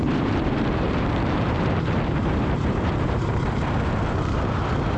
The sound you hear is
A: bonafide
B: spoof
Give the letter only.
B